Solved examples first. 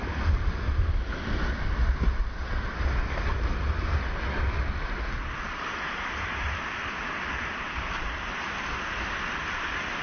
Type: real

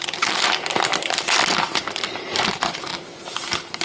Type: real